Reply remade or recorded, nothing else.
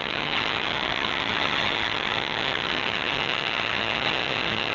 remade